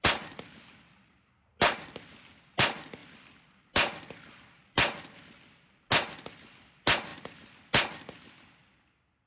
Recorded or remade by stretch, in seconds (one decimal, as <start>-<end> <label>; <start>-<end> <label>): 0.0-9.3 recorded